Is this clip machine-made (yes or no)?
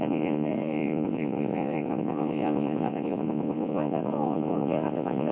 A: yes